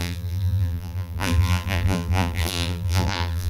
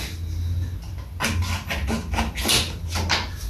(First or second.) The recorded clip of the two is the second